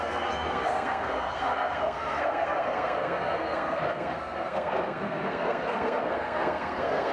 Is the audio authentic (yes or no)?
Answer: no